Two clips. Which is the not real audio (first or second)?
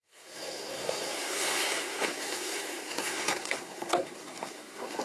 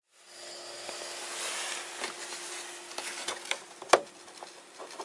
first